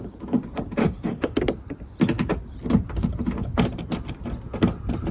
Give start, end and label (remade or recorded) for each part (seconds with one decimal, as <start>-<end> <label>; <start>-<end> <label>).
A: 0.0-0.8 recorded; 0.8-1.4 remade; 1.4-5.1 recorded